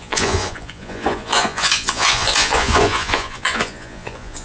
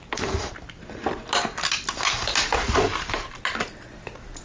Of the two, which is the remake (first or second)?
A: first